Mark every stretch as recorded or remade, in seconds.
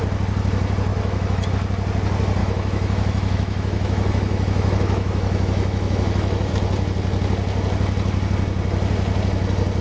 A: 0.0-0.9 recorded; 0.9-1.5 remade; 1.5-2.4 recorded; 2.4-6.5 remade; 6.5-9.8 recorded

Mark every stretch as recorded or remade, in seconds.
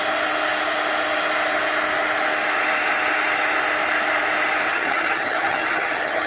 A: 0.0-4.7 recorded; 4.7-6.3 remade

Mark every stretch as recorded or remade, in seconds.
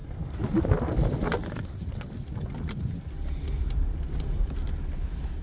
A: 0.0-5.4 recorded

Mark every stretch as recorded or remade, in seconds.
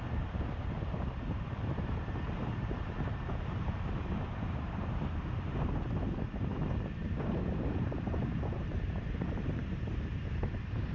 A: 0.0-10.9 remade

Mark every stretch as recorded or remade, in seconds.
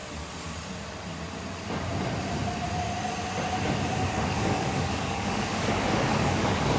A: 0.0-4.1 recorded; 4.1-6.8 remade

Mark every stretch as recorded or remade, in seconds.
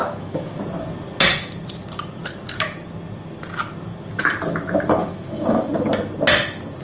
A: 0.0-0.6 remade; 0.6-5.0 recorded; 5.0-5.7 remade; 5.7-6.8 recorded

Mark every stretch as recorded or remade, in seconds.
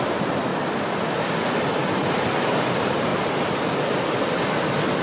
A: 0.0-0.5 remade; 0.5-2.5 recorded; 2.5-3.1 remade; 3.1-5.0 recorded